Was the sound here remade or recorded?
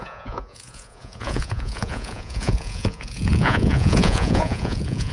remade